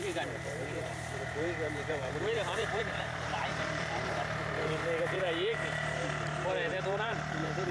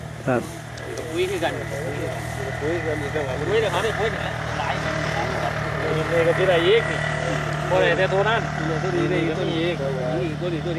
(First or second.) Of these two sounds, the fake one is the first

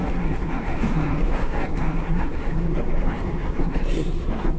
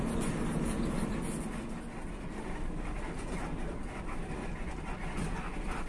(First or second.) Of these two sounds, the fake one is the first